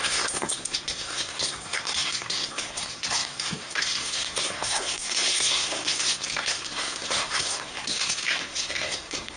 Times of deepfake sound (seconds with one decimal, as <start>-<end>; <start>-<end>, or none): 0.0-9.4